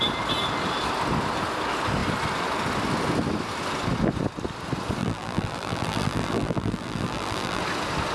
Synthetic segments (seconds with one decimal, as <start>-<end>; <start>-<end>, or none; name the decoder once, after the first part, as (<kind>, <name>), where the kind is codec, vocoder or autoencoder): 5.0-7.6 (vocoder, BigVGAN v2)